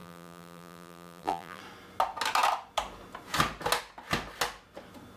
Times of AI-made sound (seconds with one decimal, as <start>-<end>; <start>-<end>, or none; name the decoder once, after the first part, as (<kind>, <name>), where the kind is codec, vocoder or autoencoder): 0.0-1.6 (vocoder, BigVGAN v2)